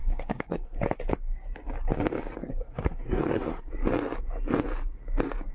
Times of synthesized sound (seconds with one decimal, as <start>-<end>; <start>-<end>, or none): 0.0-0.8; 2.4-3.7